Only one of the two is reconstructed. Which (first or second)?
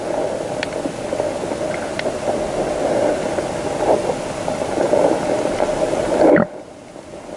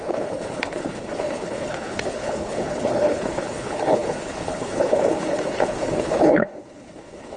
second